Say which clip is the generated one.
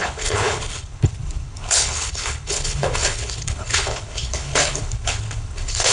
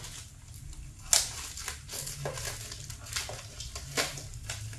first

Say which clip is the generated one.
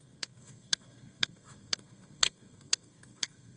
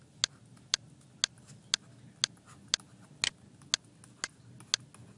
first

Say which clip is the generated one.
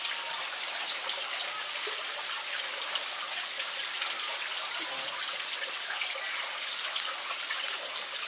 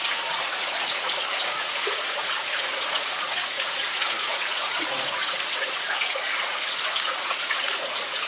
second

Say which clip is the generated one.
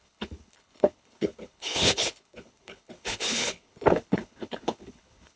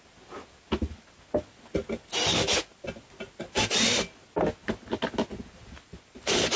first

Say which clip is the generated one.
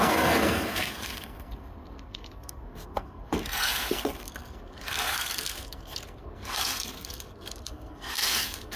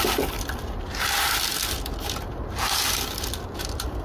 first